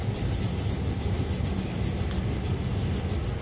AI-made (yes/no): no